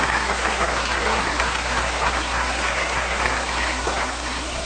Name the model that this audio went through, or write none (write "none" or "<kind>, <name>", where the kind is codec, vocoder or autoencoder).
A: codec, SNAC